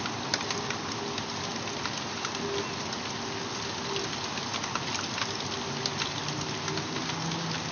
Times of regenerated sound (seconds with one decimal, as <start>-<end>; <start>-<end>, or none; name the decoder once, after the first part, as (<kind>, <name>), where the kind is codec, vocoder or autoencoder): none